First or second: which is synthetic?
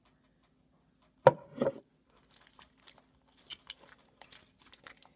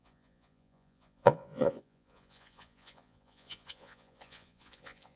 second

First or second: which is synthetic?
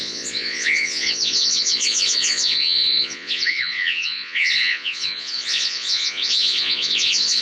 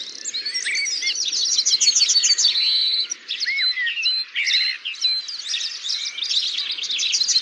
first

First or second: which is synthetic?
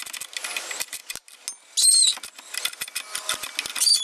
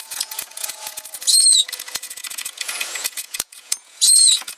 second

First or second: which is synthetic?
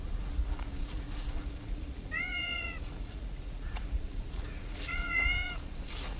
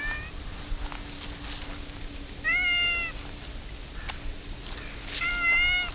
first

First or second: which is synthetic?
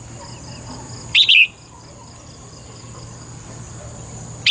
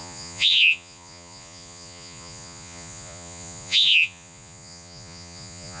second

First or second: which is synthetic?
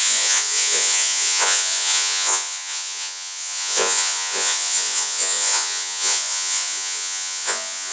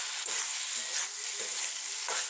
first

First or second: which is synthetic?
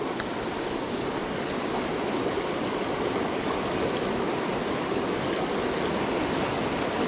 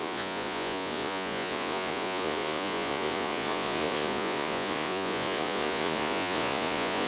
second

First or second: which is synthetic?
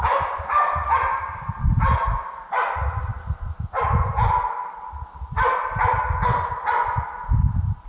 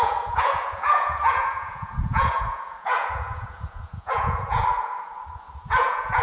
second